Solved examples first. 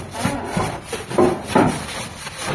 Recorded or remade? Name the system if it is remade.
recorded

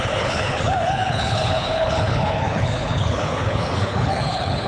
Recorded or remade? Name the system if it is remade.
remade, codec, HILCodec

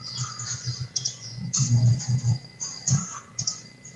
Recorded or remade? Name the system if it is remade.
remade, vocoder, Vocos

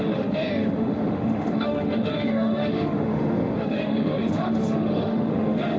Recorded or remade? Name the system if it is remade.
remade, autoencoder, DAC-VAE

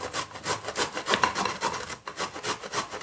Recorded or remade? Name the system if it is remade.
recorded